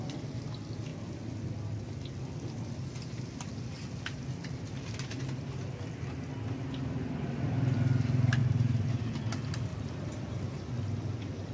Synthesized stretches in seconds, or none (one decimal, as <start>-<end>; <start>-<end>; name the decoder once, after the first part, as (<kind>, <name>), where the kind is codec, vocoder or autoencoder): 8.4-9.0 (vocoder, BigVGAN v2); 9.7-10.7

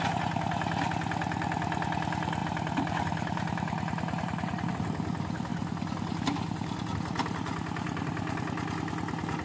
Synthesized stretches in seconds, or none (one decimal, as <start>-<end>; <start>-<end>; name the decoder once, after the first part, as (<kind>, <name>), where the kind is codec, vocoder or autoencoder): 2.4-4.7 (vocoder, BigVGAN v2)

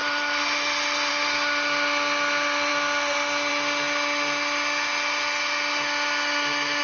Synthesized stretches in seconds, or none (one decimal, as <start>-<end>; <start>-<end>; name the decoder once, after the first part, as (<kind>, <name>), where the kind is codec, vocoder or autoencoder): 0.0-1.1 (vocoder, BigVGAN v2)